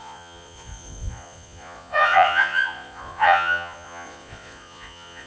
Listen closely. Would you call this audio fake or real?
fake